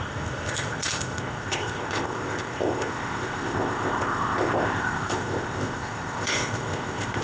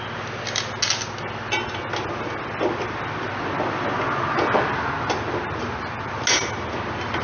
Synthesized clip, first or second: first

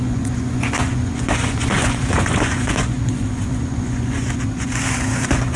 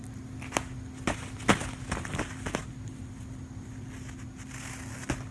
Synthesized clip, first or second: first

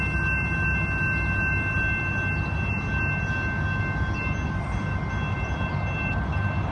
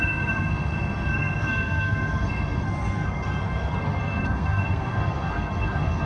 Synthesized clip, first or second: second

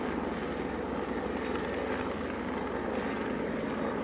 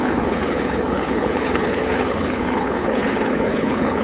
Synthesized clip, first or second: second